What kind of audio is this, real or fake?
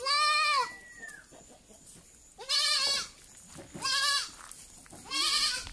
real